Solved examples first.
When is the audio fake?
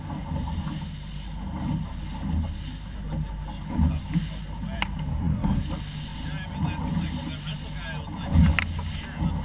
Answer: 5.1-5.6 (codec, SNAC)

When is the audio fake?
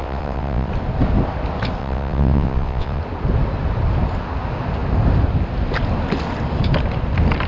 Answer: 0.0-0.7 (vocoder, WaveNeXt); 1.8-3.0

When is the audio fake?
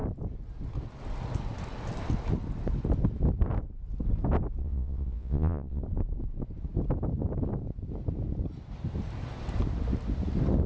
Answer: 4.6-5.8 (vocoder, Vocos)